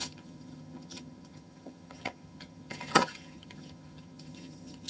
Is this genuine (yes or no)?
no